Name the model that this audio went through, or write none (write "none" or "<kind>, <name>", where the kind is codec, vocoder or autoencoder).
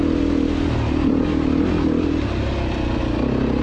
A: none